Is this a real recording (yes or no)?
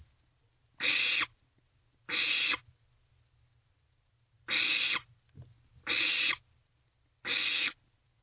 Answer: yes